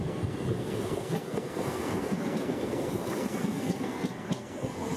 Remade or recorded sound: remade